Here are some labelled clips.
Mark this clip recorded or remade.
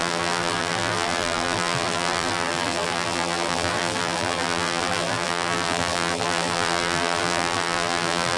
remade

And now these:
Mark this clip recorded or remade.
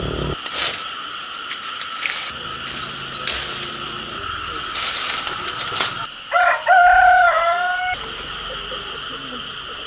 recorded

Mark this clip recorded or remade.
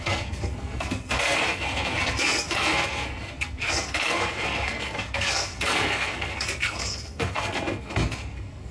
remade